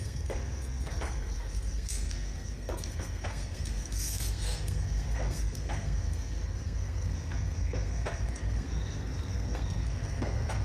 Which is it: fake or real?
fake